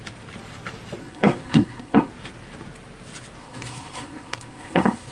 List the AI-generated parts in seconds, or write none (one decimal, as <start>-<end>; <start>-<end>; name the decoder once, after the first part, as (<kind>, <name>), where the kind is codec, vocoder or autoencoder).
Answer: 1.0-2.1 (codec, SNAC); 3.4-5.1